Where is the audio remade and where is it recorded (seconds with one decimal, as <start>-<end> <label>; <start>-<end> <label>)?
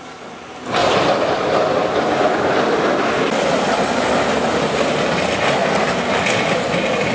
0.0-7.1 recorded